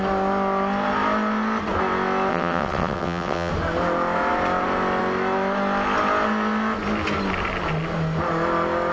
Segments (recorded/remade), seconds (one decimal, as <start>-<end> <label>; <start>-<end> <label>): 0.0-2.3 recorded; 2.3-3.5 remade; 3.5-8.9 recorded